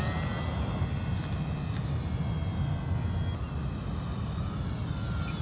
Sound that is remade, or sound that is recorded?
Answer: recorded